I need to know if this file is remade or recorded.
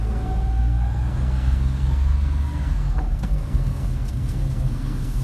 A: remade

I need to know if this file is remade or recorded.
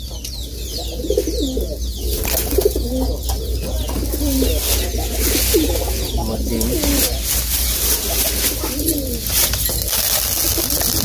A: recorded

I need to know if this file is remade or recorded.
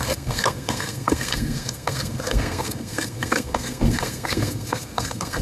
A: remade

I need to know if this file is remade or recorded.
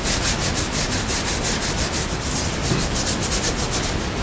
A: recorded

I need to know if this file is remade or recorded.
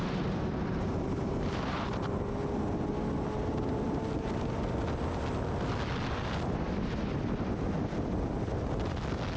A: recorded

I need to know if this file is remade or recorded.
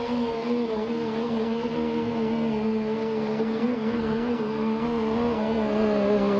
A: remade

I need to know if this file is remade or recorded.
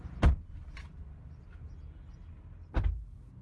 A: recorded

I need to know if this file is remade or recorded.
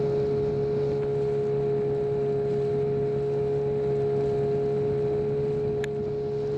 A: recorded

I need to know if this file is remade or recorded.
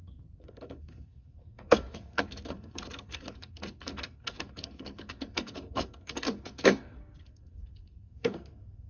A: remade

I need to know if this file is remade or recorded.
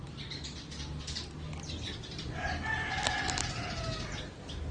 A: recorded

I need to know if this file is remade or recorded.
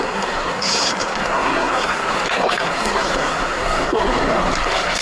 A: remade